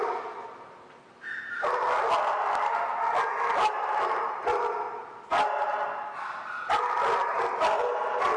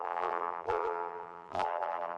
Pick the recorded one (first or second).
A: first